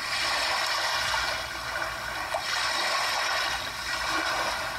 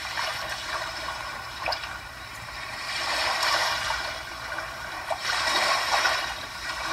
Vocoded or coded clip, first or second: second